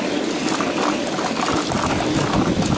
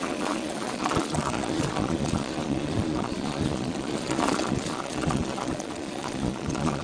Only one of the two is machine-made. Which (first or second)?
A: second